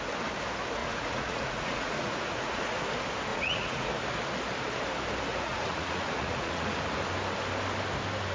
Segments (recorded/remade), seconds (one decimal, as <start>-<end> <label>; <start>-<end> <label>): 0.0-0.8 recorded; 0.8-2.8 remade; 2.8-3.3 recorded; 3.3-3.9 remade; 3.9-5.3 recorded; 5.3-6.8 remade; 6.8-8.3 recorded